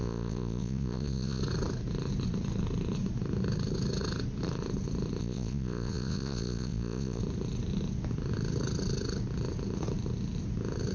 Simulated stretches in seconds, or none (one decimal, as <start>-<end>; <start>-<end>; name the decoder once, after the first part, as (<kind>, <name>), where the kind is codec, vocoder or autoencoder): 0.0-1.4 (vocoder, Vocos); 5.2-7.2